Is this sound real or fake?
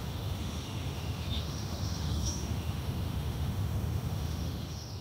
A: fake